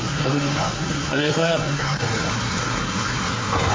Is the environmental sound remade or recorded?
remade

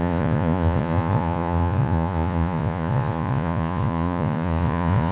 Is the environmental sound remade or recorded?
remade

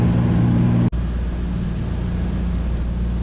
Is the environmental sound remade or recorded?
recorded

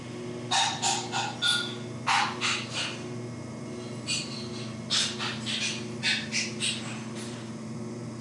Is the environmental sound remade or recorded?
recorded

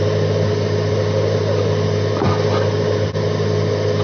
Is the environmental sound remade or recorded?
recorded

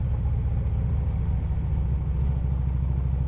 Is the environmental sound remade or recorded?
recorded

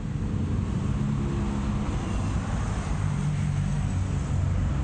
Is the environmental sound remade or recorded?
recorded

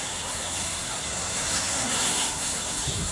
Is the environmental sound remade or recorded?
remade